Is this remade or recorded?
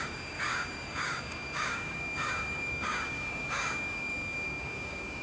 remade